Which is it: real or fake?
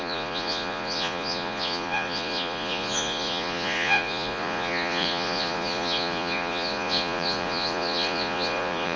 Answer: fake